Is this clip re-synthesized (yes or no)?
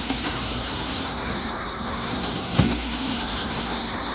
yes